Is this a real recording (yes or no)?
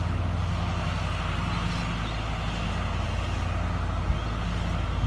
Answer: yes